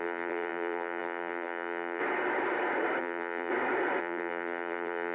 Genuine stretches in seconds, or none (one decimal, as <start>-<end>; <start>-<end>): 2.0-3.0; 3.5-4.0